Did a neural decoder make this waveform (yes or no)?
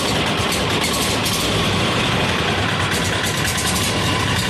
yes